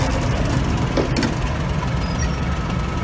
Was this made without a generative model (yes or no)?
yes